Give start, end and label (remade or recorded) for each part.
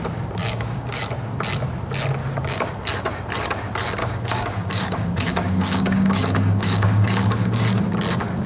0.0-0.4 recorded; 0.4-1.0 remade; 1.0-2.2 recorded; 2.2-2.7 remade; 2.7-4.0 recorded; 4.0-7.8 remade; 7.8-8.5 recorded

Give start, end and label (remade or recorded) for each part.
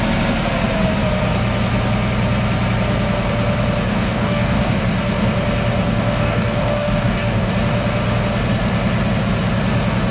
0.0-3.9 recorded; 3.9-4.8 remade; 4.8-5.7 recorded; 5.7-7.5 remade; 7.5-10.1 recorded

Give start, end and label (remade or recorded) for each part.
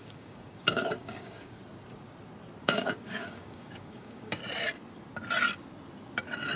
0.0-1.6 remade; 1.6-2.6 recorded; 2.6-4.4 remade; 4.4-6.6 recorded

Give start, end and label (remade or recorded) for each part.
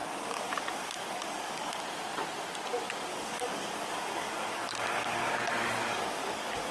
0.0-1.8 remade; 1.8-3.1 recorded; 3.1-5.3 remade; 5.3-5.9 recorded; 5.9-6.7 remade